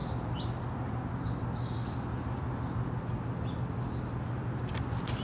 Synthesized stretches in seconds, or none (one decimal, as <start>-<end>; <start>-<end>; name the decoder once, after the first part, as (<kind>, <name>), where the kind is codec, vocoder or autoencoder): none